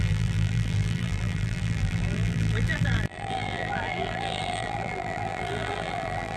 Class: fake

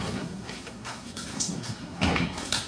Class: fake